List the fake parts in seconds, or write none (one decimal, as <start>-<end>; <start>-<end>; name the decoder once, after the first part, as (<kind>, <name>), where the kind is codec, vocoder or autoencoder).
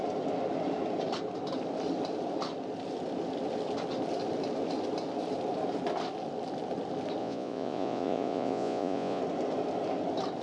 7.2-9.2 (vocoder, Vocos)